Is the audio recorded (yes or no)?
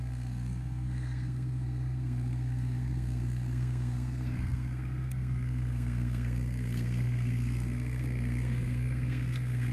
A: no